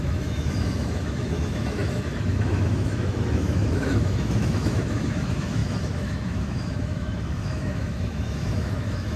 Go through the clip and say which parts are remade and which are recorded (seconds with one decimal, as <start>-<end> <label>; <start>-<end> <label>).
0.0-9.2 remade